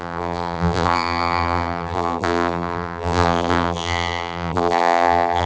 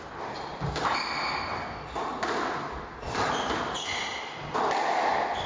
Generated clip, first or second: first